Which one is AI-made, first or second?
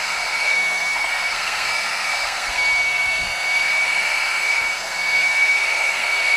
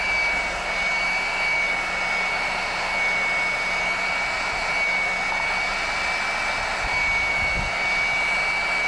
first